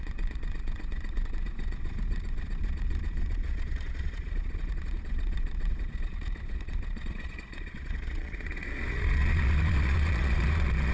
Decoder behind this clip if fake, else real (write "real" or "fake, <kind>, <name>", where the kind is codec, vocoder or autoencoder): fake, vocoder, Vocos